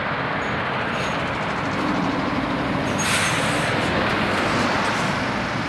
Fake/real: real